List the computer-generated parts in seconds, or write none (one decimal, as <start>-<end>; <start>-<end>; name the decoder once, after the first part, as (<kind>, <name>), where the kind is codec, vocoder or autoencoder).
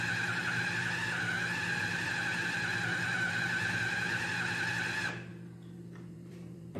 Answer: 5.3-6.8 (vocoder, BigVGAN v2)